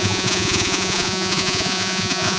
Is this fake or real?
fake